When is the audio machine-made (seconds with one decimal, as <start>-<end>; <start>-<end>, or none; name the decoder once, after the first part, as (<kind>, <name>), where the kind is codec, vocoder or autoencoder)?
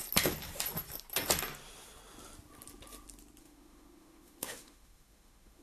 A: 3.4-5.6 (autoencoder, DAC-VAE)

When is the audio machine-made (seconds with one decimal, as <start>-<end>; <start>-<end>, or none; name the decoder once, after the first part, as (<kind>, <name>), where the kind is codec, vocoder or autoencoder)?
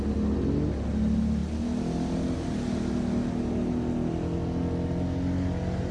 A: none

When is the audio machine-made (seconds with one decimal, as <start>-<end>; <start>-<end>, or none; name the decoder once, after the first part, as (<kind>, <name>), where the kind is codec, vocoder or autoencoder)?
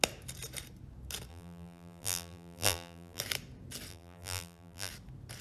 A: 1.3-3.2 (vocoder, BigVGAN v2); 3.9-4.9